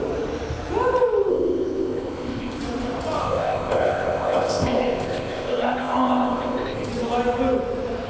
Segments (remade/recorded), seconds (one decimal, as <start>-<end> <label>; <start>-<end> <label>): 0.0-1.3 recorded; 1.3-2.6 remade; 2.6-3.2 recorded; 3.2-6.9 remade; 6.9-8.1 recorded